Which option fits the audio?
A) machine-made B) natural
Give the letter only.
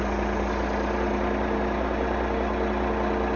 B